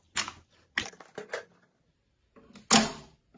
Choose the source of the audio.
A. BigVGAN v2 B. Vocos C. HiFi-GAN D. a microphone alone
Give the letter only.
D